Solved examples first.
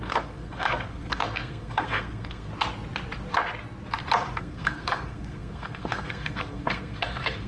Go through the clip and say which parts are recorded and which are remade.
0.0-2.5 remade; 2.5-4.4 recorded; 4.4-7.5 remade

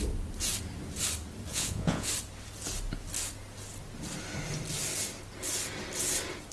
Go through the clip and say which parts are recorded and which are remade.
0.0-1.5 recorded; 1.5-2.1 remade; 2.1-6.5 recorded

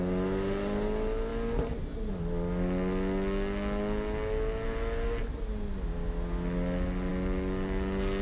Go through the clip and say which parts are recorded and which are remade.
0.0-8.2 recorded